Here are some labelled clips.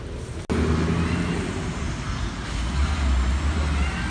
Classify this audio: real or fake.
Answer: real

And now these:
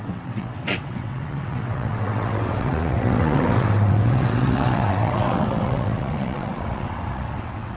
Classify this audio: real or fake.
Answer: fake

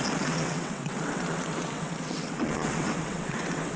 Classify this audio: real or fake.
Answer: fake